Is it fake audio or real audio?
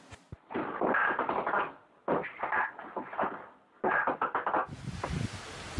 real